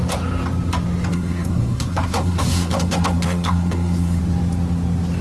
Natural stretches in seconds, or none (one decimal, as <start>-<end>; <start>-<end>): 0.0-1.1; 4.2-5.2